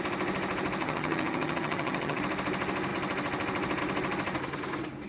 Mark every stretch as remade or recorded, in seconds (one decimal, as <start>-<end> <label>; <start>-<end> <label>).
0.0-0.8 recorded; 0.8-2.2 remade; 2.2-5.1 recorded